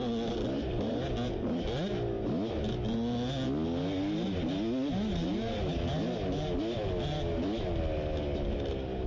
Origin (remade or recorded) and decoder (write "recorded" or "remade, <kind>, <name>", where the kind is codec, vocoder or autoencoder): recorded